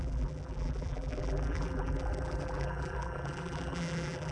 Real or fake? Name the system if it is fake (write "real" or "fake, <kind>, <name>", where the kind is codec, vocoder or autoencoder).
fake, vocoder, BigVGAN v2